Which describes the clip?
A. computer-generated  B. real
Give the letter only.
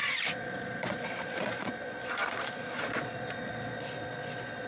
A